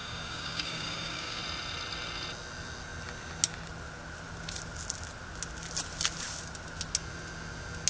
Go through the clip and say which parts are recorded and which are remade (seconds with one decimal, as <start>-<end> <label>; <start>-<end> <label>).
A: 0.0-1.4 remade; 1.4-7.9 recorded